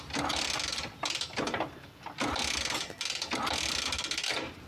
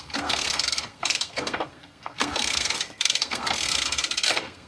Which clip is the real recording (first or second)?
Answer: first